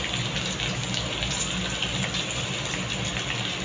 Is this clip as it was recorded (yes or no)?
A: yes